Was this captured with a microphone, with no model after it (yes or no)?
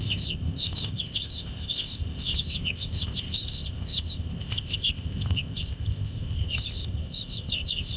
no